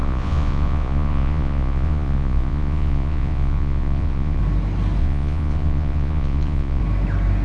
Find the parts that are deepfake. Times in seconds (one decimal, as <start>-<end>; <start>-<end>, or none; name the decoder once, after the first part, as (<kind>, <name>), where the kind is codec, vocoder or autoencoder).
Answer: 0.0-4.4 (vocoder, Vocos); 5.0-6.8